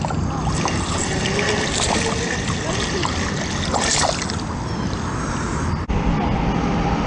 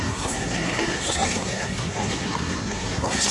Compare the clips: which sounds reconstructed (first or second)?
second